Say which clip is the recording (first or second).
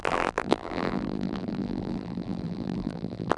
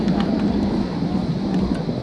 second